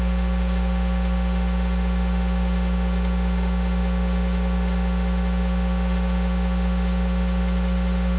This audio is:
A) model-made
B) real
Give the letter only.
A